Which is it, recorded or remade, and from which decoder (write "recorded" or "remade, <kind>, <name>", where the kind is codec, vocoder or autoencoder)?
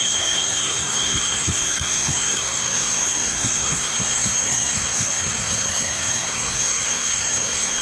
remade, codec, SNAC